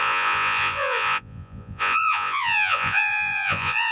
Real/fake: fake